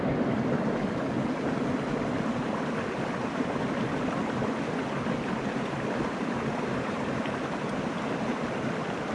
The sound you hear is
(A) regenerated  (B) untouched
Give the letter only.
B